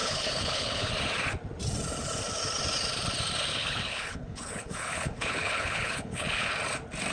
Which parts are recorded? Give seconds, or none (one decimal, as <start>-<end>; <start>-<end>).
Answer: 0.9-3.5; 6.5-7.1